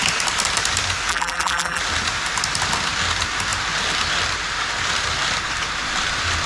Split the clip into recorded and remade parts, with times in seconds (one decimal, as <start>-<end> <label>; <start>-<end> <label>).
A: 0.0-1.1 recorded; 1.1-1.8 remade; 1.8-6.5 recorded